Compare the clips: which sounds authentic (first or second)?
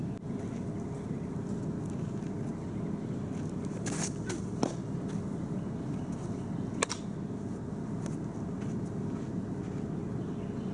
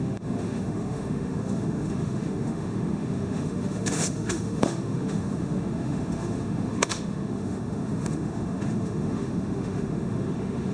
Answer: first